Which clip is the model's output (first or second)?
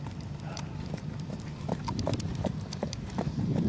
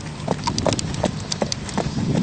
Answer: first